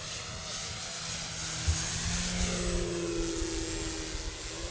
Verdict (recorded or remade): recorded